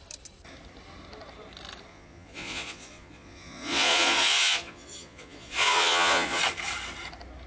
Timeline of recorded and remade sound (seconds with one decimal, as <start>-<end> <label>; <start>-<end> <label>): 0.0-1.9 recorded; 1.9-6.4 remade; 6.4-7.5 recorded